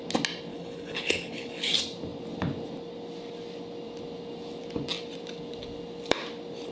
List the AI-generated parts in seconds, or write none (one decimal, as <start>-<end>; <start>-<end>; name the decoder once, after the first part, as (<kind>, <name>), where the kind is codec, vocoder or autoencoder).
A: 0.5-1.7 (codec, HILCodec)